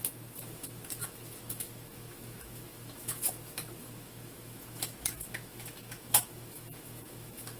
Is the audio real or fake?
fake